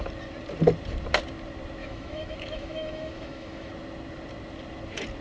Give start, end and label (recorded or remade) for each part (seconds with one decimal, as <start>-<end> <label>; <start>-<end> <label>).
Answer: 0.0-1.8 recorded; 1.8-3.7 remade; 3.7-5.2 recorded